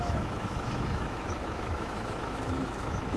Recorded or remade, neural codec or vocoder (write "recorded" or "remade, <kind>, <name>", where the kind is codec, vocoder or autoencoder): remade, autoencoder, DAC-VAE